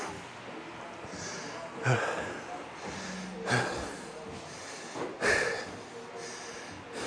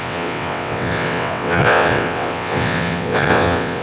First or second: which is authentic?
first